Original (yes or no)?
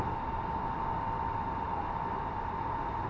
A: yes